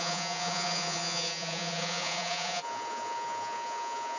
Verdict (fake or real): fake